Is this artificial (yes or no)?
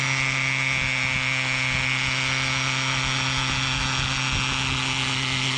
no